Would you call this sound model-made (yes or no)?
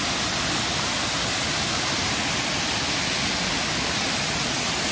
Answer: no